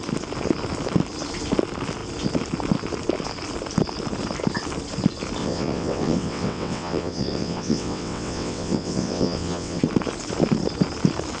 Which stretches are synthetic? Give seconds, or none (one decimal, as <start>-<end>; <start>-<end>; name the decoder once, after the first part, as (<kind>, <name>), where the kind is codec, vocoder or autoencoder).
5.4-9.8 (vocoder, WaveNeXt)